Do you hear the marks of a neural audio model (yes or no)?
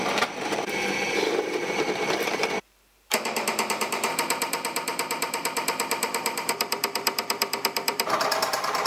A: yes